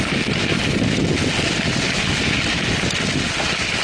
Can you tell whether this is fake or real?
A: real